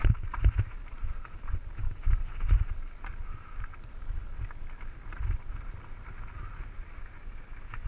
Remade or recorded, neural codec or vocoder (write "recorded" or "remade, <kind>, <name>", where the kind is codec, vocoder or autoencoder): recorded